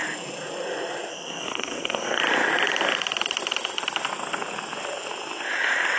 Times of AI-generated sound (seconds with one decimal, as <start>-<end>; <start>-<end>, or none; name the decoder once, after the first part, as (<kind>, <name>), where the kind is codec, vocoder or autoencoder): 1.1-2.2 (codec, SNAC)